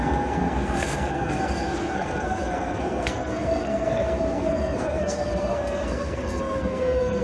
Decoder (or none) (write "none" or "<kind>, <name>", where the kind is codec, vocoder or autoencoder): codec, SNAC